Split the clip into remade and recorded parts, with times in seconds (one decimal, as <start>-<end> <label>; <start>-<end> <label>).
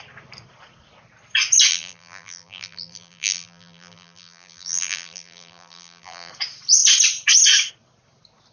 0.0-1.7 recorded; 1.7-6.3 remade; 6.3-8.5 recorded